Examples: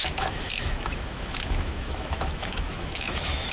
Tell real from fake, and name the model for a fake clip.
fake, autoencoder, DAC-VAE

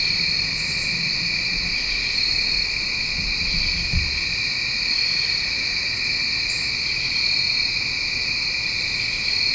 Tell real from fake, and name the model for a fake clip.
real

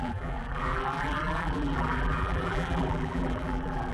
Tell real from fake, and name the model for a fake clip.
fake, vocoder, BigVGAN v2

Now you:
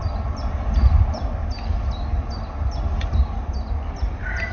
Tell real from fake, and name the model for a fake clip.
real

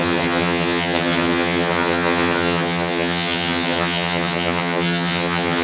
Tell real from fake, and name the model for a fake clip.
fake, vocoder, HiFi-GAN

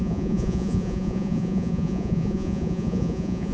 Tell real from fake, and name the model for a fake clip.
fake, vocoder, Vocos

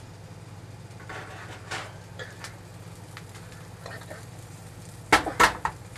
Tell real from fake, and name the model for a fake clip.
real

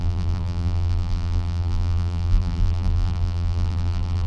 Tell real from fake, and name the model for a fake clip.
fake, vocoder, BigVGAN v2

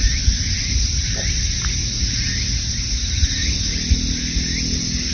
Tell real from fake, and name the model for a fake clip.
real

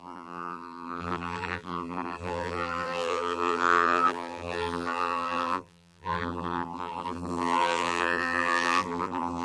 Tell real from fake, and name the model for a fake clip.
fake, vocoder, BigVGAN v2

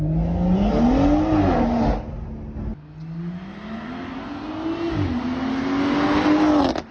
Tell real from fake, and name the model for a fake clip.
real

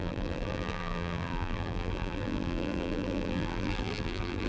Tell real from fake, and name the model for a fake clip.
fake, vocoder, BigVGAN v2